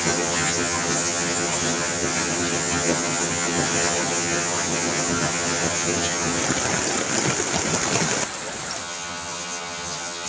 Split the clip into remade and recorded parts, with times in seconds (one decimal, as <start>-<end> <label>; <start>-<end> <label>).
0.0-6.4 remade; 6.4-8.8 recorded; 8.8-10.3 remade

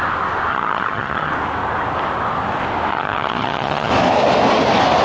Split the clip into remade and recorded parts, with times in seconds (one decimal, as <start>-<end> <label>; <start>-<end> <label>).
0.0-0.5 recorded; 0.5-1.3 remade; 1.3-2.9 recorded; 2.9-3.9 remade; 3.9-5.0 recorded

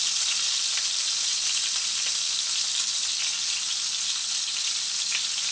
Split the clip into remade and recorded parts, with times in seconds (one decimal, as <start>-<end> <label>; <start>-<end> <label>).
0.0-5.5 recorded

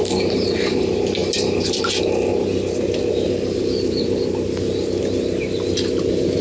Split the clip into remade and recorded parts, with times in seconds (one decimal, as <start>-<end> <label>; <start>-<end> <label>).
0.0-6.4 recorded

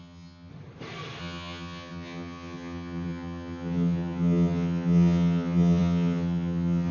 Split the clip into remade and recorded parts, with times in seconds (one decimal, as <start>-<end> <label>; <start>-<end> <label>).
0.0-0.5 remade; 0.5-1.2 recorded; 1.2-6.9 remade

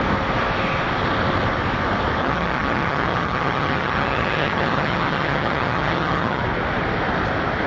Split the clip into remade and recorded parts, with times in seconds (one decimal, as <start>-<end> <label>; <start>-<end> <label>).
0.0-2.2 recorded; 2.2-6.4 remade; 6.4-7.7 recorded